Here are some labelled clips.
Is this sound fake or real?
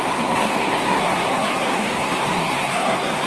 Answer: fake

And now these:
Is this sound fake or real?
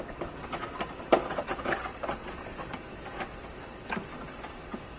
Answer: real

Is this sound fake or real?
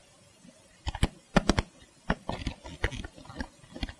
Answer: real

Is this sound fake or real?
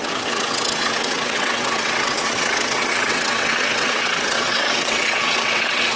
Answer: fake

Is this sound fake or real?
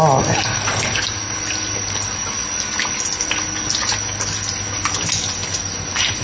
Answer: real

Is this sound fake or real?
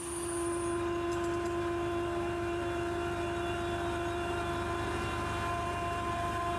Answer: real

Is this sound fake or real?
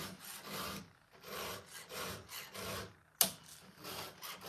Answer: real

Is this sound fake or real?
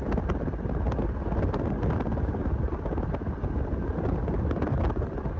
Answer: real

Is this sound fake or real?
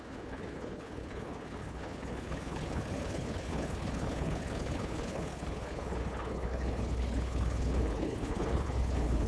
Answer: fake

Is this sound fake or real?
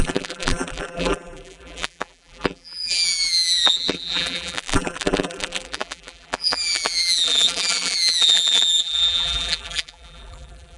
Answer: fake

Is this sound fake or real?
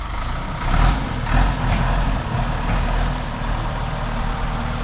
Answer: real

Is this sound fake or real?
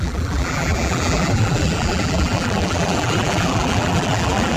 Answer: fake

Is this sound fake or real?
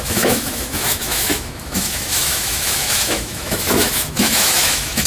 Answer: fake